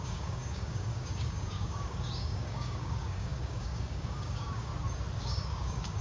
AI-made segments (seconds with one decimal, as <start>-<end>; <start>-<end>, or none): 0.0-4.7; 5.2-6.0